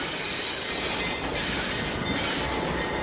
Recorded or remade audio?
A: recorded